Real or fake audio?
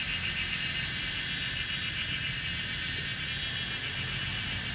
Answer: real